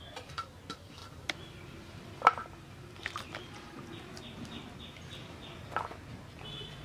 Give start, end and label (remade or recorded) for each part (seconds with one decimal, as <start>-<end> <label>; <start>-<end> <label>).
0.0-6.8 recorded